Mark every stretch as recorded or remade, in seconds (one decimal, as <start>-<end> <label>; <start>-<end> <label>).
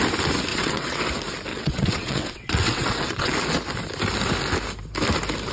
0.0-0.5 recorded; 0.5-1.1 remade; 1.1-1.5 recorded; 1.5-3.3 remade; 3.3-5.5 recorded